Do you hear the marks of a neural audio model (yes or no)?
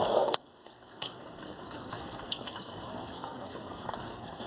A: yes